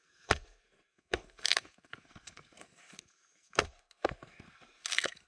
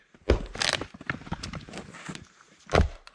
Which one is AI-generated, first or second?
first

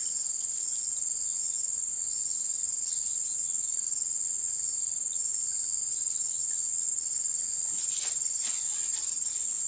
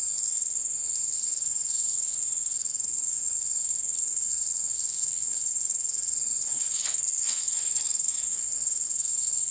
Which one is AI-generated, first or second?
second